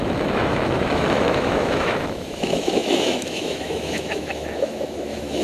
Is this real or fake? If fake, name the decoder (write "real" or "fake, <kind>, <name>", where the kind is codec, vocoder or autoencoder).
fake, autoencoder, DAC-VAE